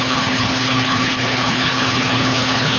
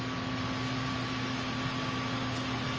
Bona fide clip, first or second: second